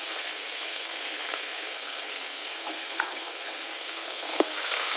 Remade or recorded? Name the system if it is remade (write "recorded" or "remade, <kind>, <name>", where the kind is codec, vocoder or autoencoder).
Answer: remade, codec, SNAC